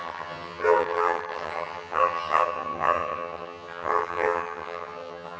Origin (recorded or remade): remade